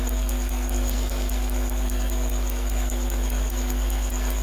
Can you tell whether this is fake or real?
fake